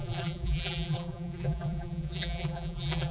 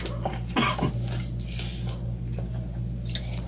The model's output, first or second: first